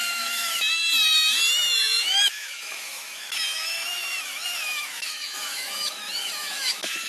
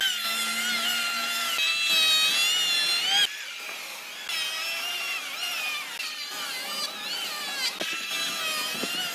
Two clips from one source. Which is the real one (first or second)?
second